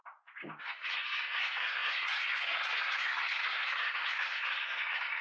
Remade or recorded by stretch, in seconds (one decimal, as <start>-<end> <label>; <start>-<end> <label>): 0.0-0.6 recorded; 0.6-5.2 remade